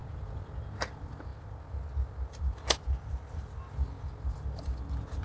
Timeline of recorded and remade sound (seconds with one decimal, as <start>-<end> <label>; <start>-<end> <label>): 0.0-5.2 recorded